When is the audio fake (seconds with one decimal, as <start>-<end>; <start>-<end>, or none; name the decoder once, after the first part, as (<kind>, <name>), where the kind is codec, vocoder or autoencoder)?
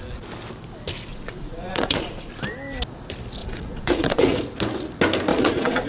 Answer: 1.1-2.3 (vocoder, Vocos); 3.4-4.4; 5.3-5.9